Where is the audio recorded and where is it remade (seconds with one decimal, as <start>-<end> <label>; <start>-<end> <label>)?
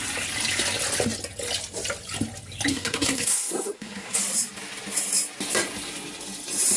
0.0-2.7 recorded; 2.7-4.2 remade; 4.2-6.8 recorded